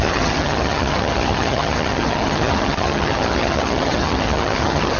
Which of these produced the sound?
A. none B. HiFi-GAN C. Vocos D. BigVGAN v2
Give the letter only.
B